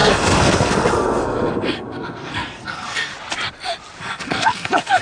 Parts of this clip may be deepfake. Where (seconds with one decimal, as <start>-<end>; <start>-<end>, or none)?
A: 0.0-3.1; 4.0-5.0